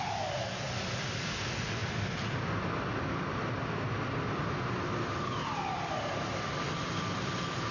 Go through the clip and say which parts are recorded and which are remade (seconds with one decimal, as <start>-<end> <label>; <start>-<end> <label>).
0.0-7.7 recorded

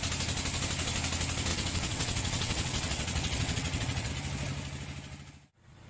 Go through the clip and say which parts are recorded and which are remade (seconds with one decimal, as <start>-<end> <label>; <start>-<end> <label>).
0.0-1.5 recorded; 1.5-4.1 remade; 4.1-5.9 recorded

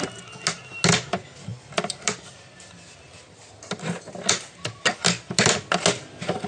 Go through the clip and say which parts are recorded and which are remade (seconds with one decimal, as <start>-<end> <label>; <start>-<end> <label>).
0.0-6.5 recorded

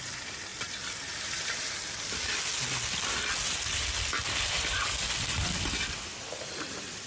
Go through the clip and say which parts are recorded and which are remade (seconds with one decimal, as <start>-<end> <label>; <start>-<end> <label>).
0.0-7.1 recorded

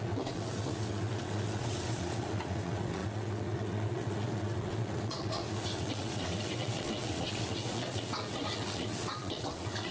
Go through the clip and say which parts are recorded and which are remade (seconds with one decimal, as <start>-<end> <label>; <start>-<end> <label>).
0.0-9.9 remade